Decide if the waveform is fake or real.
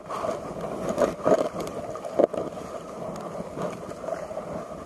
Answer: real